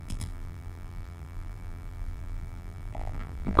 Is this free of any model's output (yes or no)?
no